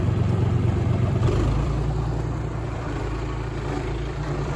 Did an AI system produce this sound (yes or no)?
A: yes